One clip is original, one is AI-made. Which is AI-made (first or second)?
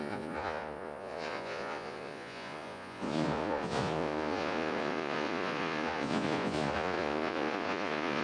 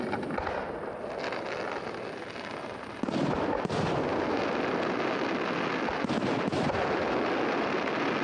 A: first